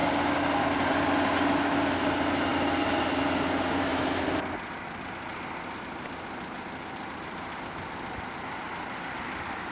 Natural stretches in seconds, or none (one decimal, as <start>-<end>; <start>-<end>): 0.0-9.7